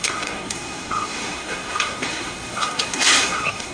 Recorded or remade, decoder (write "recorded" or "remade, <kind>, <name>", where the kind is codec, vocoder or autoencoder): remade, codec, SNAC